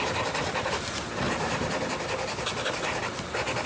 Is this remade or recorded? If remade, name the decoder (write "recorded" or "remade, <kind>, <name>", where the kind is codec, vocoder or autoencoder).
recorded